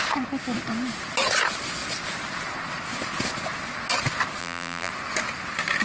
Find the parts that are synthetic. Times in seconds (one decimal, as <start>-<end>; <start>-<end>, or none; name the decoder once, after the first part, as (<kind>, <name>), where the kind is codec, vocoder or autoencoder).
4.4-4.9 (vocoder, BigVGAN v2)

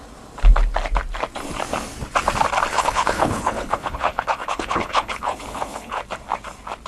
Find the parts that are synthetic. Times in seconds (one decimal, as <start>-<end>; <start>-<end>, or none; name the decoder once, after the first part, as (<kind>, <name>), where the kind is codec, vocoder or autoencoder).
2.7-6.0 (codec, HILCodec)

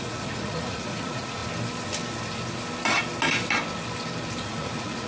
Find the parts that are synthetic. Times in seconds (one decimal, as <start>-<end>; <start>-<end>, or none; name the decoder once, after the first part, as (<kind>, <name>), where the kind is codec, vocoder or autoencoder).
0.0-1.4 (vocoder, Vocos); 4.5-5.1